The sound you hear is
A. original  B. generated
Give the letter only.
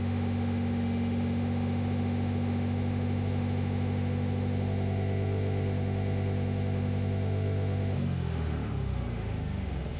B